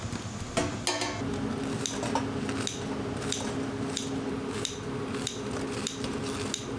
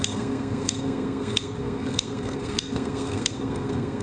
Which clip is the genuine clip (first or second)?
first